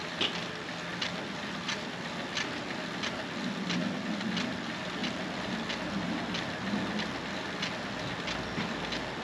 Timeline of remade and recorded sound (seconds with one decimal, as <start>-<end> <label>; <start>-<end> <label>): 0.0-9.2 recorded